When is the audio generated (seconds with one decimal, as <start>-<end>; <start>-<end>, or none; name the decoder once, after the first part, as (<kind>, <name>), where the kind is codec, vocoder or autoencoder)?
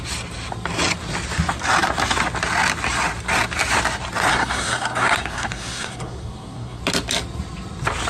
4.3-6.8 (codec, SNAC)